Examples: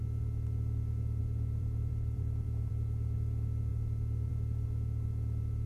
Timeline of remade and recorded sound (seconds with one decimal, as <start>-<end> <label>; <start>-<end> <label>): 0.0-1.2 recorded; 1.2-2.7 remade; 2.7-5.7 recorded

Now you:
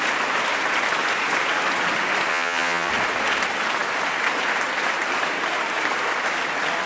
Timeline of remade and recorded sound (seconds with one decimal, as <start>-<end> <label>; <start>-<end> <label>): 0.0-2.3 recorded; 2.3-2.9 remade; 2.9-6.9 recorded

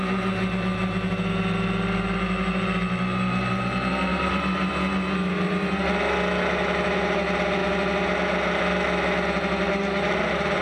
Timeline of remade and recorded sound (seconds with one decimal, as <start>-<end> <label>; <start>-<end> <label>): 0.0-4.1 recorded; 4.1-4.7 remade; 4.7-10.6 recorded

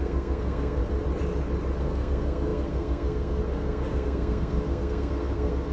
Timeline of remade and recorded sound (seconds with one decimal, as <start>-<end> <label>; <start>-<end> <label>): 0.0-0.8 remade; 0.8-1.8 recorded; 1.8-5.7 remade

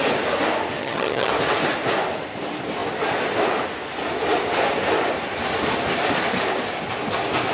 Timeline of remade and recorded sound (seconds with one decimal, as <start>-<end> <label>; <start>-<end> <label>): 0.0-0.8 recorded; 0.8-1.3 remade; 1.3-7.5 recorded

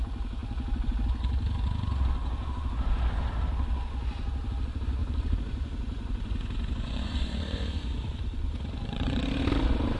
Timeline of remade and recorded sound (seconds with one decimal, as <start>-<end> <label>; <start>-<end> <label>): 0.0-5.0 recorded; 5.0-9.2 remade; 9.2-10.0 recorded

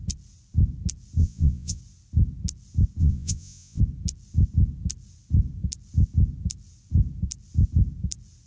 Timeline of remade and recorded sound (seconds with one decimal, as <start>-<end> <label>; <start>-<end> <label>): 0.0-1.2 recorded; 1.2-1.8 remade; 1.8-3.0 recorded; 3.0-3.8 remade; 3.8-8.5 recorded